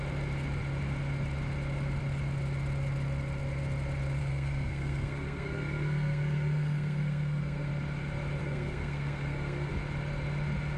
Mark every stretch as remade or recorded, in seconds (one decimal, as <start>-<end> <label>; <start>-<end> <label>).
0.0-4.2 recorded; 4.2-7.7 remade; 7.7-8.4 recorded; 8.4-9.7 remade; 9.7-10.8 recorded